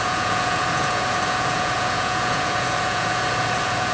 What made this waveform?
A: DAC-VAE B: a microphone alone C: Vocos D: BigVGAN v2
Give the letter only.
C